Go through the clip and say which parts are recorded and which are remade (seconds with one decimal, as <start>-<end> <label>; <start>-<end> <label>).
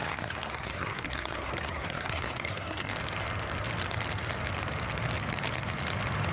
0.0-2.9 remade; 2.9-6.3 recorded